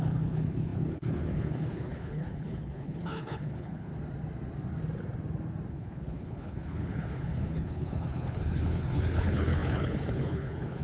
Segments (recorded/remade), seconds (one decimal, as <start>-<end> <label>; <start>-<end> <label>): 0.0-3.9 remade; 3.9-5.7 recorded; 5.7-10.8 remade